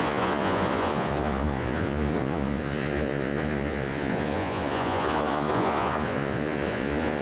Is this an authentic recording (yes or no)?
no